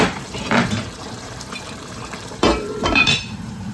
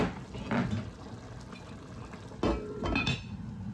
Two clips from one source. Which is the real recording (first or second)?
second